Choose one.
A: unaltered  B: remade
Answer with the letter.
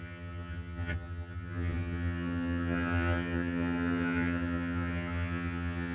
B